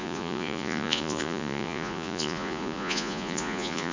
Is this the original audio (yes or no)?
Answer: no